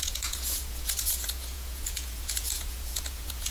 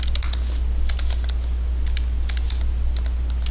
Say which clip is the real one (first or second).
second